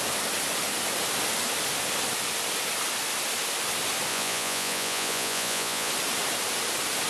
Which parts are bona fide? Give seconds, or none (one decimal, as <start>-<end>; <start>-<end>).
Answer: 0.0-4.1; 5.9-7.1